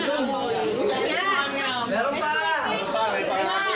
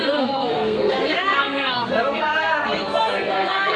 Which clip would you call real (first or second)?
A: first